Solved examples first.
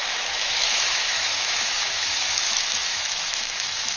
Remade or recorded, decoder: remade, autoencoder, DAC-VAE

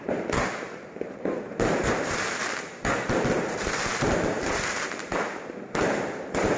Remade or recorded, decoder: remade, vocoder, BigVGAN v2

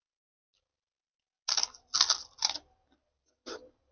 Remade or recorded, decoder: recorded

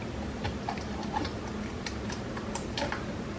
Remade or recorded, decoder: recorded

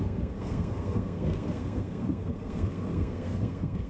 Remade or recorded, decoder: remade, codec, SNAC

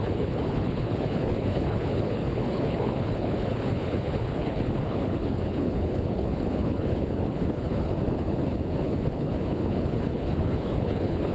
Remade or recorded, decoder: remade, codec, HILCodec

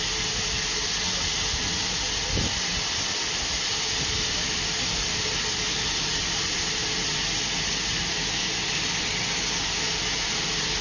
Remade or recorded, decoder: recorded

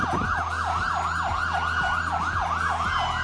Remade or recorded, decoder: recorded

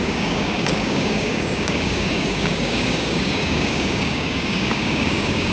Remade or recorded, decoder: remade, codec, DAC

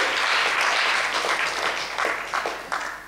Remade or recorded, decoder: recorded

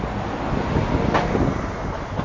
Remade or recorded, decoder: recorded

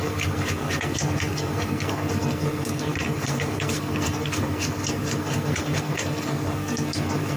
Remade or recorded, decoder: remade, codec, SNAC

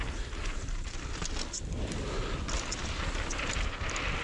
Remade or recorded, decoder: remade, vocoder, BigVGAN v2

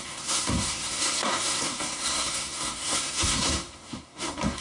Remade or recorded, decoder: remade, codec, SNAC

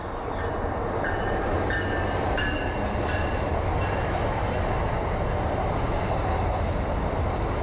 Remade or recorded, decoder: recorded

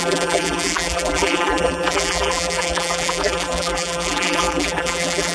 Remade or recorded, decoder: remade, vocoder, BigVGAN v2